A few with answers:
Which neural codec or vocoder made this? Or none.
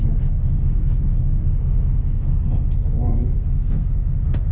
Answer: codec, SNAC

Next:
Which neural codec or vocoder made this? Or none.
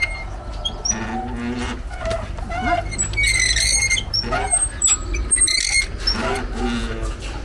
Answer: none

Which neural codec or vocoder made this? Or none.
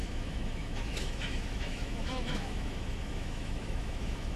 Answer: autoencoder, DAC-VAE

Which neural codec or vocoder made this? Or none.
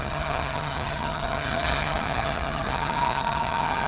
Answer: vocoder, HiFi-GAN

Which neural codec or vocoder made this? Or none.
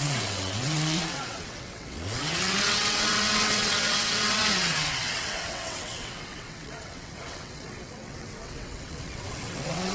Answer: vocoder, WaveNeXt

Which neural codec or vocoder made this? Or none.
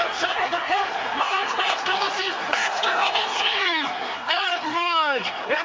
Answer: codec, SNAC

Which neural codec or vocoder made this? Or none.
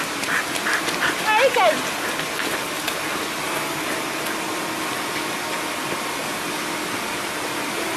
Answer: none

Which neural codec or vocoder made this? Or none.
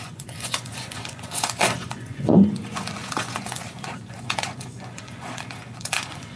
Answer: vocoder, Vocos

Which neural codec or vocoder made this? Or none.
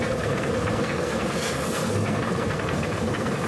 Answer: codec, SNAC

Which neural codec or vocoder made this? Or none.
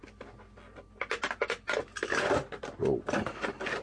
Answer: none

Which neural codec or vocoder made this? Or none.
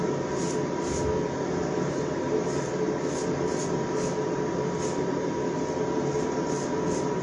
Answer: none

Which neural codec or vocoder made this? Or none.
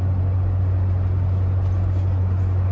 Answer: none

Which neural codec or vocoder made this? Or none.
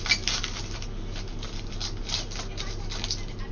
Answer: none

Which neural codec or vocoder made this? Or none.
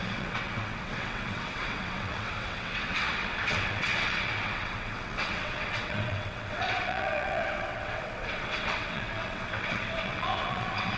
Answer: vocoder, WaveNeXt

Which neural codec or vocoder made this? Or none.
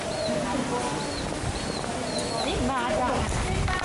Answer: none